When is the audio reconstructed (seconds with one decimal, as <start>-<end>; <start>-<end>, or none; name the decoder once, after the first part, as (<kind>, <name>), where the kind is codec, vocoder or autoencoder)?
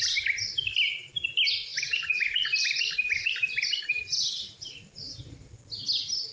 1.7-5.5 (vocoder, BigVGAN v2)